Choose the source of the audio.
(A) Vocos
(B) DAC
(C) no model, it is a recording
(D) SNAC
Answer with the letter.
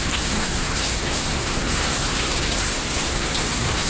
D